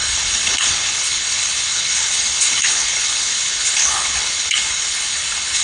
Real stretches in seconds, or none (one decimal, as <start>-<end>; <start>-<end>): none